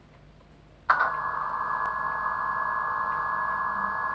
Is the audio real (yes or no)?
yes